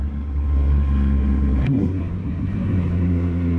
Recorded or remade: remade